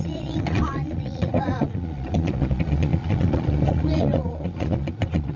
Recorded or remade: remade